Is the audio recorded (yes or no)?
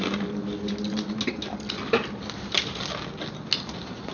yes